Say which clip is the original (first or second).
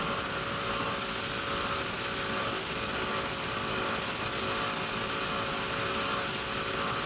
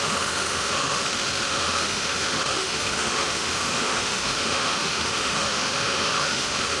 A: first